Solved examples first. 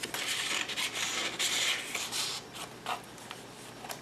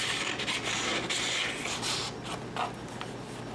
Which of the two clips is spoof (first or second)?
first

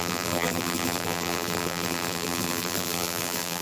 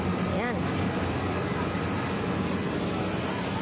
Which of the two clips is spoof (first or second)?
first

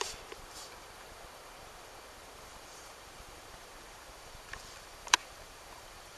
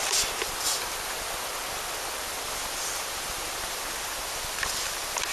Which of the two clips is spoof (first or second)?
first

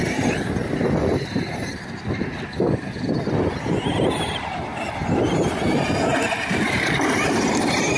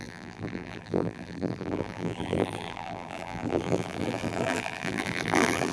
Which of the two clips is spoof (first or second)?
second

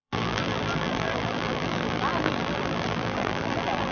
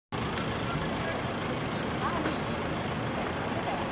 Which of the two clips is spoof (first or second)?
first